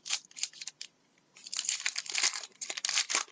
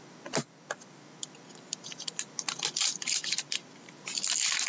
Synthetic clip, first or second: first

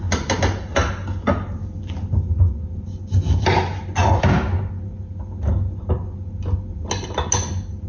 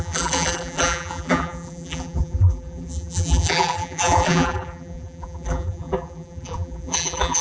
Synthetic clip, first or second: second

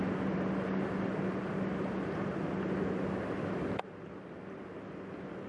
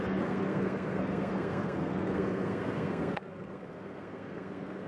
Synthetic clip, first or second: second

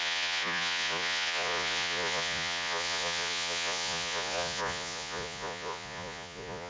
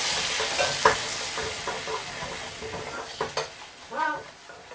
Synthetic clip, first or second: first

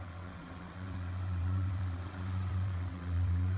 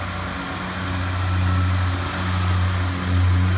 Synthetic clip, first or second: first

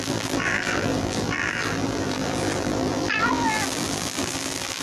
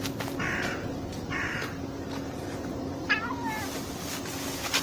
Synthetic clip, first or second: first